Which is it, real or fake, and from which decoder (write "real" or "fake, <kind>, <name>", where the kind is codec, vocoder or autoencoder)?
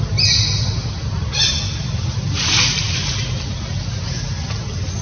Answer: real